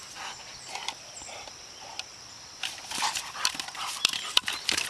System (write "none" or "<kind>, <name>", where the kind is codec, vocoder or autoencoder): none